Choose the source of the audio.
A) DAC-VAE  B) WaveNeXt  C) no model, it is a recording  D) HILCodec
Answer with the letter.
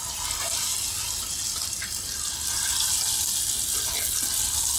C